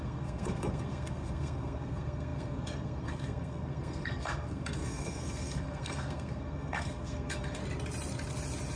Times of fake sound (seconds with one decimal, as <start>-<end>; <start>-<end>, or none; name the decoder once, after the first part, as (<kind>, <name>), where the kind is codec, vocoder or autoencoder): 0.0-7.6 (codec, SNAC)